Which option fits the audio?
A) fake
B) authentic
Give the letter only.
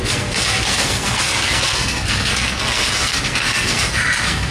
A